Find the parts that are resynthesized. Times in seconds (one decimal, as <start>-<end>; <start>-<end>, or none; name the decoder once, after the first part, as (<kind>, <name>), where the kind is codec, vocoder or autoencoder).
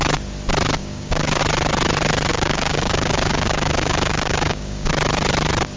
0.8-1.4 (codec, DAC); 2.3-4.9